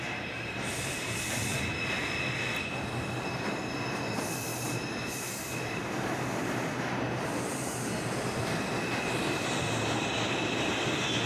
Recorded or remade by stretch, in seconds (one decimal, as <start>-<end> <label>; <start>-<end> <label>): 0.0-4.5 recorded; 4.5-5.1 remade; 5.1-11.3 recorded